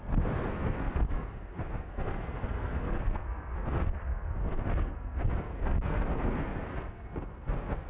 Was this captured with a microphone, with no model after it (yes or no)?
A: no